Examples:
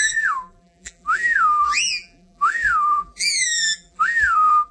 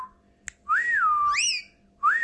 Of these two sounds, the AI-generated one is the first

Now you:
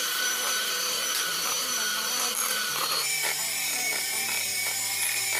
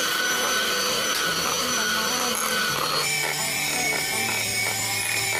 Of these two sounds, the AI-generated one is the first